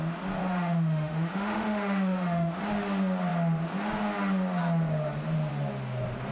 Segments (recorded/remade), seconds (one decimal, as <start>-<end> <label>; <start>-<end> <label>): 0.0-0.4 recorded; 0.4-2.6 remade; 2.6-6.3 recorded